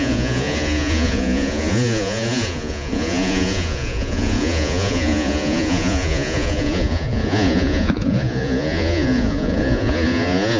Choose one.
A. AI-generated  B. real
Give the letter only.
A